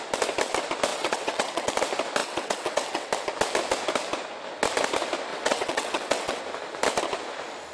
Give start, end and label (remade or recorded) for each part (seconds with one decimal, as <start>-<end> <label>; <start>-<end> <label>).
0.0-0.9 recorded; 0.9-1.7 remade; 1.7-2.2 recorded; 2.2-3.1 remade; 3.1-5.3 recorded; 5.3-6.4 remade; 6.4-7.7 recorded